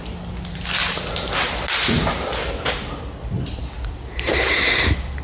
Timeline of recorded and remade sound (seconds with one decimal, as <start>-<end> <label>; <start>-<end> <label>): 0.0-5.2 recorded